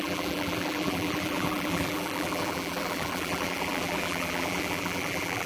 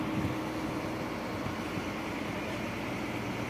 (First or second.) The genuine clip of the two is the second